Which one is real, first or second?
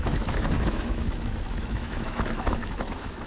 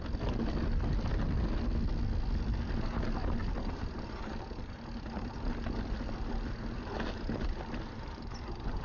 second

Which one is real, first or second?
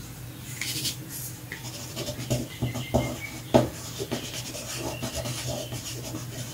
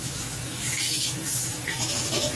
first